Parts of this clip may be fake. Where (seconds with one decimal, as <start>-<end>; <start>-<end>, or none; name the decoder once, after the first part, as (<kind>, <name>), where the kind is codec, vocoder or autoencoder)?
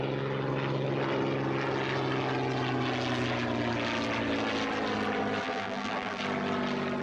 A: 5.4-6.2 (vocoder, BigVGAN v2)